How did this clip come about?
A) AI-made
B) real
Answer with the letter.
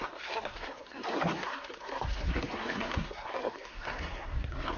A